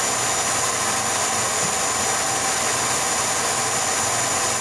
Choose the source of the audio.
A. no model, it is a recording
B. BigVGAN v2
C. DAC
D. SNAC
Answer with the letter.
A